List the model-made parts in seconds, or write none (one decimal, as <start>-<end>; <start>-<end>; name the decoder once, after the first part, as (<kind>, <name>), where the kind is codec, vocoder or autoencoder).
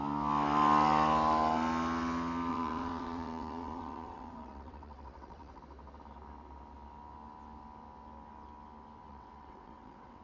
2.5-5.6 (vocoder, WaveNeXt); 9.1-10.2